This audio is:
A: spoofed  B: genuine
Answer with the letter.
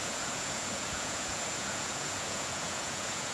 A